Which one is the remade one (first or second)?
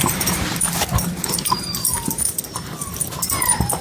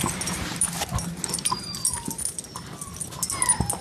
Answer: first